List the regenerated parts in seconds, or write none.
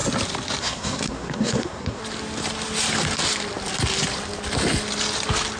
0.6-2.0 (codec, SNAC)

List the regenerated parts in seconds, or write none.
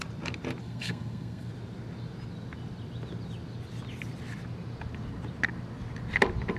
0.6-1.5 (codec, SNAC)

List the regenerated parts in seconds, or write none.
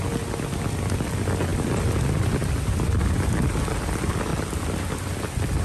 none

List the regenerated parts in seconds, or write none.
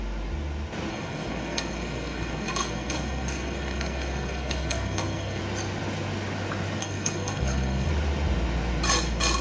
0.9-5.4 (codec, SNAC); 6.8-7.9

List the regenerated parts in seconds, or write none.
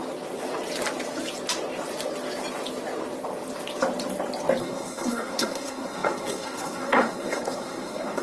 4.6-8.2 (codec, SNAC)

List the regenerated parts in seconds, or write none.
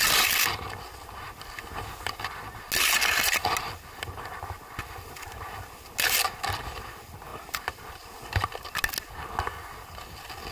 none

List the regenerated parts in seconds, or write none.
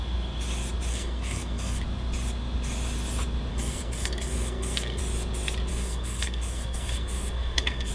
0.9-1.8 (codec, SNAC); 3.5-5.0; 5.7-7.9